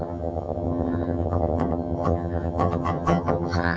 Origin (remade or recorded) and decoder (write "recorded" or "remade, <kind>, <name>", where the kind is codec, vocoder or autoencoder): remade, vocoder, HiFi-GAN